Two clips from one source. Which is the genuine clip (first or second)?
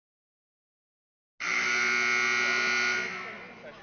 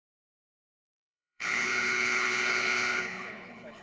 first